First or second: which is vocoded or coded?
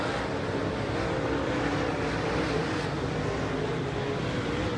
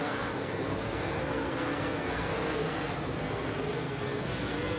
second